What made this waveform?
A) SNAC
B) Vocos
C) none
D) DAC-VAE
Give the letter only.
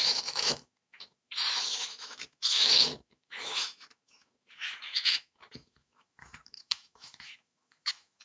D